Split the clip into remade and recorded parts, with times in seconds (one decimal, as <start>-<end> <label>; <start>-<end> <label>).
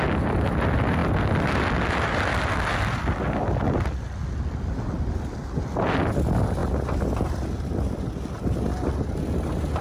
0.0-9.8 recorded